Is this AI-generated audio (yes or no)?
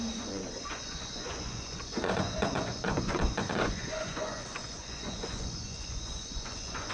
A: yes